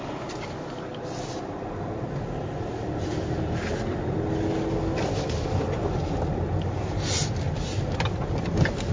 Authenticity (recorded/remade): recorded